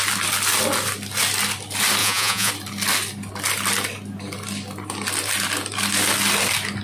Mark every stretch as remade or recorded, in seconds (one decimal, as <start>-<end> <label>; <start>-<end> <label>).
0.0-2.0 recorded; 2.0-2.5 remade; 2.5-6.8 recorded